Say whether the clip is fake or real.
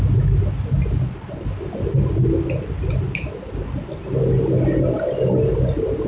real